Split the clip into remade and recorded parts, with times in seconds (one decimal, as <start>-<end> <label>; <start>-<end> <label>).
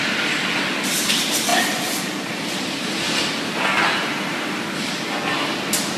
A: 0.0-1.5 recorded; 1.5-4.5 remade; 4.5-6.0 recorded